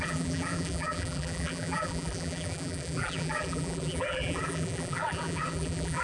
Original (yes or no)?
no